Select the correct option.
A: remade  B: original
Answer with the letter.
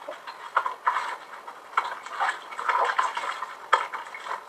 B